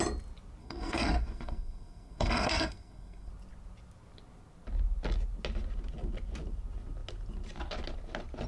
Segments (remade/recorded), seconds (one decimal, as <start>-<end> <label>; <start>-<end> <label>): 0.0-0.6 recorded; 0.6-3.3 remade; 3.3-8.5 recorded